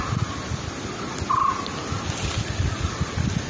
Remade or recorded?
recorded